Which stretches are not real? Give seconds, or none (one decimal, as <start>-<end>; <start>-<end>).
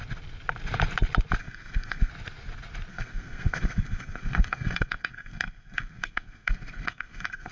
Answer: 1.4-2.1; 2.9-7.5